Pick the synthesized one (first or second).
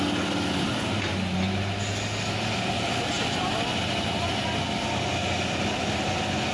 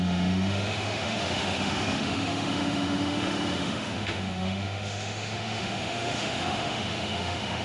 second